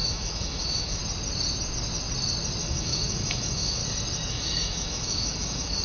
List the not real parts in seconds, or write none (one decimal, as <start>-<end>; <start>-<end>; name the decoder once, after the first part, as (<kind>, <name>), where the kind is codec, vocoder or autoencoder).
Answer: 0.0-1.0 (autoencoder, DAC-VAE); 2.6-3.8; 4.3-5.8